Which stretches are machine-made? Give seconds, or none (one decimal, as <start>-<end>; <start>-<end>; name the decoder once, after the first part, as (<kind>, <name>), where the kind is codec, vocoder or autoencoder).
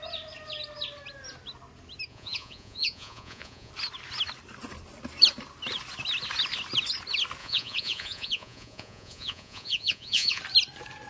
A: 2.1-3.7 (vocoder, Vocos); 7.4-10.4